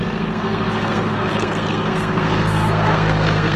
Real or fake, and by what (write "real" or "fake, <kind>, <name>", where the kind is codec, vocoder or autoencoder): fake, codec, SNAC